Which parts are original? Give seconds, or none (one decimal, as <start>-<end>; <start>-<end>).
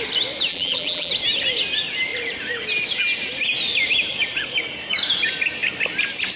0.0-0.5; 1.1-6.4